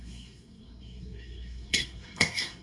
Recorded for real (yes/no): no